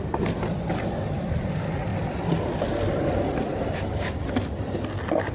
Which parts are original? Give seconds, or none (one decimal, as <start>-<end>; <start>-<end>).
0.0-5.3